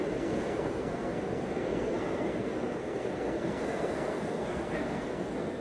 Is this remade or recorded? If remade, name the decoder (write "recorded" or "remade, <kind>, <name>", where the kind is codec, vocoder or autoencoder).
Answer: remade, codec, SNAC